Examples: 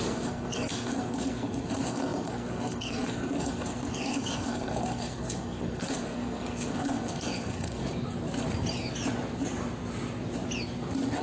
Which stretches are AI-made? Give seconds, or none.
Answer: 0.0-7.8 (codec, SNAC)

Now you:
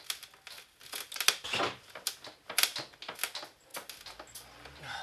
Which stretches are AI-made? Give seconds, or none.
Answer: none

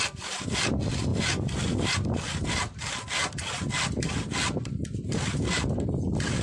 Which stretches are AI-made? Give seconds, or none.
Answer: none

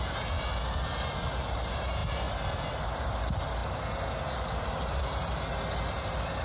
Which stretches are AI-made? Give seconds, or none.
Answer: 0.0-3.6 (vocoder, BigVGAN v2); 4.4-6.4

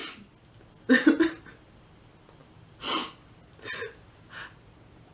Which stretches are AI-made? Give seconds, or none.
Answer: none